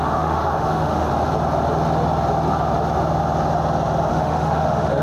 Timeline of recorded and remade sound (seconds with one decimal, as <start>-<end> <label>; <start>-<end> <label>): 0.0-1.1 remade; 1.1-4.1 recorded; 4.1-5.0 remade